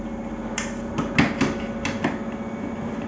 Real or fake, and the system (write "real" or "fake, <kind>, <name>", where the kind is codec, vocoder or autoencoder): real